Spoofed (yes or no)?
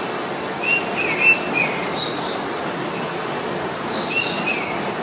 no